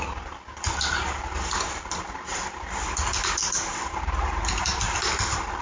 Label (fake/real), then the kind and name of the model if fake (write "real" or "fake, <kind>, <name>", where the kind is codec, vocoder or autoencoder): real